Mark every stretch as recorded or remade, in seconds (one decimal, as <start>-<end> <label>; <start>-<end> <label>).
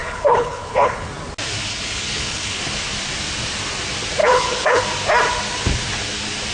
0.0-1.1 remade; 1.1-1.7 recorded; 1.7-2.6 remade; 2.6-4.2 recorded; 4.2-4.8 remade; 4.8-6.5 recorded